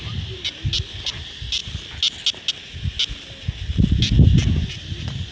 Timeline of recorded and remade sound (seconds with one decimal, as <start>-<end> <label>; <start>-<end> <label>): 0.0-5.3 recorded